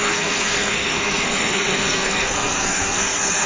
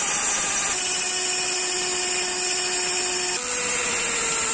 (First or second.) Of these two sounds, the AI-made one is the first